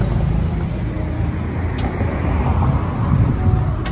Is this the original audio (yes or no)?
yes